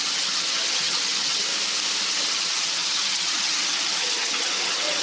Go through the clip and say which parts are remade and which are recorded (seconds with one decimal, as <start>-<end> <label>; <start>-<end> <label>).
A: 0.0-1.5 remade; 1.5-2.1 recorded; 2.1-5.0 remade